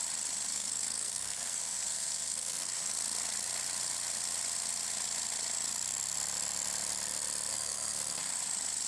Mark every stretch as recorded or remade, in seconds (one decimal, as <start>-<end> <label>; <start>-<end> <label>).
0.0-0.5 recorded; 0.5-2.9 remade; 2.9-7.5 recorded; 7.5-8.2 remade; 8.2-8.9 recorded